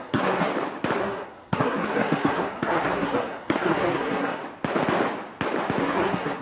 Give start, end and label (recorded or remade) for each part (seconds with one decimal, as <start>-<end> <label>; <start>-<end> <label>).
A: 0.0-0.5 remade; 0.5-1.0 recorded; 1.0-4.4 remade; 4.4-5.8 recorded; 5.8-6.4 remade